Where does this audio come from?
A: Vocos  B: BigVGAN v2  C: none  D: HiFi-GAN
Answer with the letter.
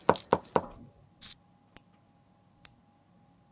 C